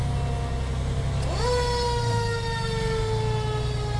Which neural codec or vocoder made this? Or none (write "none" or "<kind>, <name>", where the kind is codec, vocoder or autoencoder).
none